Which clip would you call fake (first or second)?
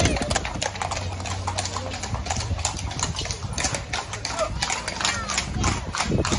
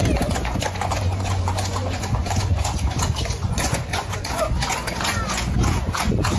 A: second